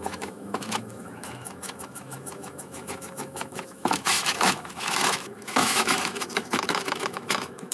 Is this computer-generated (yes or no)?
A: yes